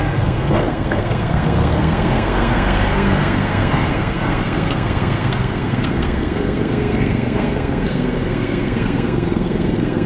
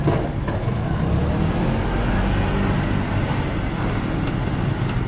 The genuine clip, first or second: second